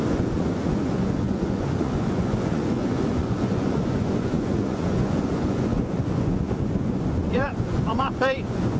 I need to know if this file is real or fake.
fake